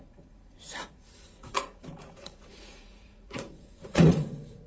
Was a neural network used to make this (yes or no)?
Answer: yes